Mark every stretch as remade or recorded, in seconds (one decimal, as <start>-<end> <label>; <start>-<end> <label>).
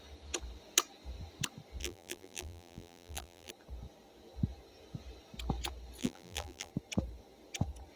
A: 0.0-1.8 recorded; 1.8-3.5 remade; 3.5-6.0 recorded; 6.0-6.7 remade; 6.7-8.0 recorded